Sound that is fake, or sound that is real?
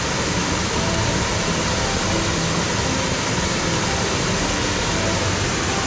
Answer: real